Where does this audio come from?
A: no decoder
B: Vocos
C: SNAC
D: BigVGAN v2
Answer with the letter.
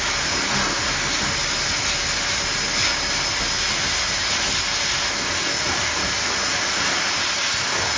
A